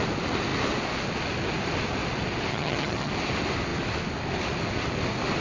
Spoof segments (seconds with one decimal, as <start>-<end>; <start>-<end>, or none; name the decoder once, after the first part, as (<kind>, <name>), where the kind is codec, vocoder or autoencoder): 2.5-3.1 (vocoder, HiFi-GAN)